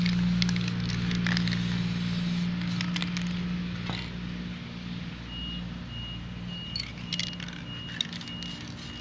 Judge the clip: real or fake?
real